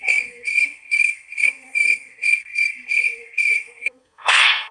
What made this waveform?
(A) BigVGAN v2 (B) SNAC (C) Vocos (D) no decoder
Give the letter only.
B